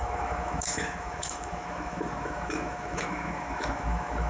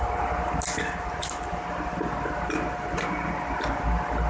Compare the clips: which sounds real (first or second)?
second